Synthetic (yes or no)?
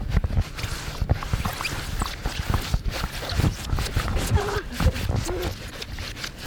no